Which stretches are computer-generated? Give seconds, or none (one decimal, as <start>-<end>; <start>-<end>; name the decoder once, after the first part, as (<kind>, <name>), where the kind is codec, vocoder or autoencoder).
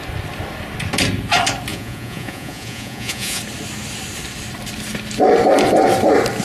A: 1.7-3.4 (vocoder, Vocos)